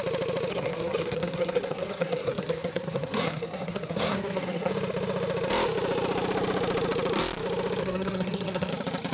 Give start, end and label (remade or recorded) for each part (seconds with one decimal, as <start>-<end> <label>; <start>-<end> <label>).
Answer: 0.0-0.5 recorded; 0.5-4.7 remade; 4.7-7.8 recorded; 7.8-8.7 remade; 8.7-9.1 recorded